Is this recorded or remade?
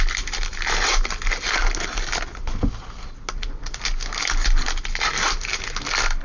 recorded